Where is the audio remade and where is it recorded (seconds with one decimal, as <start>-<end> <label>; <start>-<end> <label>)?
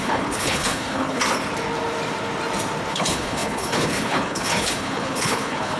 0.0-1.2 remade; 1.2-2.9 recorded; 2.9-5.8 remade